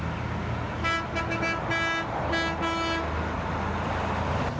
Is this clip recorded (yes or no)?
yes